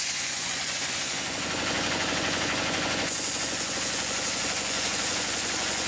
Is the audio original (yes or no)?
no